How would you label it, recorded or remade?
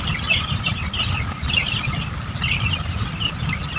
recorded